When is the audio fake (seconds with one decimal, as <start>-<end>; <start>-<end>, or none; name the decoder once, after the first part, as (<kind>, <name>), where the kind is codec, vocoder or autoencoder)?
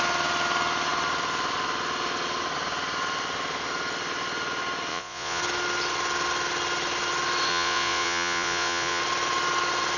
4.9-5.4 (vocoder, Vocos); 7.5-9.0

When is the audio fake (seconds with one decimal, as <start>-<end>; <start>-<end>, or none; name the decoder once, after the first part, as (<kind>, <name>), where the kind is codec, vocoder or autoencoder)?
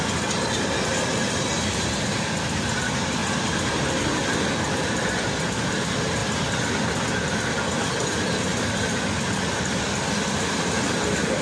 none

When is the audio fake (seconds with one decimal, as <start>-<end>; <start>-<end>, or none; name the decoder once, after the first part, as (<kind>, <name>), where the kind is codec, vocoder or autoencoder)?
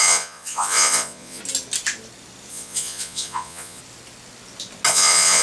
0.0-1.4 (vocoder, Vocos); 2.5-3.8; 4.9-5.4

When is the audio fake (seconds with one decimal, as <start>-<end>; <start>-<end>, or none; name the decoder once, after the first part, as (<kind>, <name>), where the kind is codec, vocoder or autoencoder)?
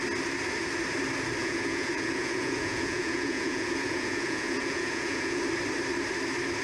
1.4-5.4 (vocoder, Vocos)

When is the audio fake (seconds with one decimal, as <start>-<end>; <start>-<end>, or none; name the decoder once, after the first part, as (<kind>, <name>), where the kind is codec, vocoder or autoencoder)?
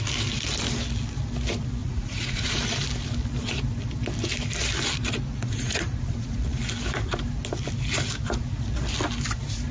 1.8-2.6 (vocoder, Vocos); 5.4-6.6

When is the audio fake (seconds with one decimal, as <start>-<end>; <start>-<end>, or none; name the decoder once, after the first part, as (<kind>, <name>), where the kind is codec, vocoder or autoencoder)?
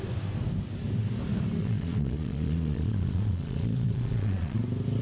1.6-4.6 (vocoder, Vocos)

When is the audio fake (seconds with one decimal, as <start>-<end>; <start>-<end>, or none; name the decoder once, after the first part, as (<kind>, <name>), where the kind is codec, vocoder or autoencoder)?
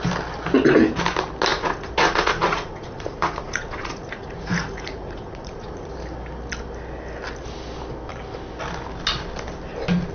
1.5-5.9 (vocoder, Vocos)